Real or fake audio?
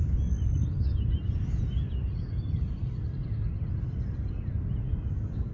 real